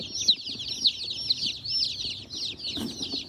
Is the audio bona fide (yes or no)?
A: yes